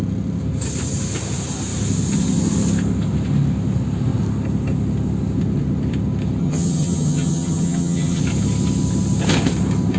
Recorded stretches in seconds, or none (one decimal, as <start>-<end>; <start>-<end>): 0.0-6.4; 8.2-10.0